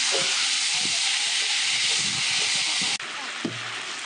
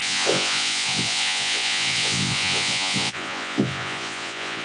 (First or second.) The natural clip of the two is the first